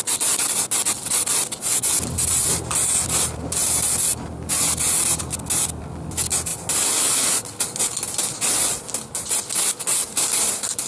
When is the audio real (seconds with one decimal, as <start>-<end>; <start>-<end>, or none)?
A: 0.0-10.9

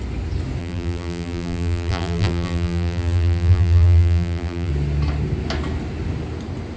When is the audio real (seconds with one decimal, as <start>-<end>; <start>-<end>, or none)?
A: 0.0-0.6; 4.7-6.8

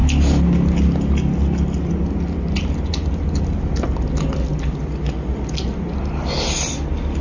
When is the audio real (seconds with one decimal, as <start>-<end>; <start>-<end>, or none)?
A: 0.0-7.2

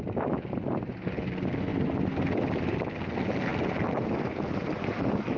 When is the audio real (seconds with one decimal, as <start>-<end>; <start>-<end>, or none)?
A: 0.0-3.5

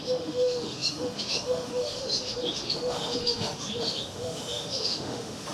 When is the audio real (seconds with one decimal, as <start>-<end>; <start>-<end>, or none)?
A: none

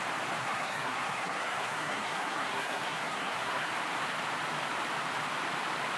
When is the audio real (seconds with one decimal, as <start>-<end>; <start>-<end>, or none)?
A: 0.0-0.4; 3.7-6.0